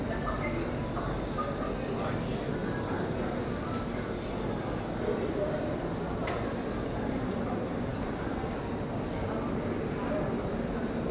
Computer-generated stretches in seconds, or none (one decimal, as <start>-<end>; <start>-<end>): none